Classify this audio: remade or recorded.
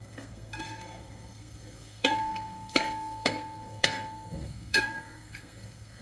remade